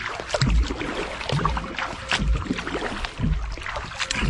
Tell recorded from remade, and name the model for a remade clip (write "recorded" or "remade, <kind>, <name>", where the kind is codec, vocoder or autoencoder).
recorded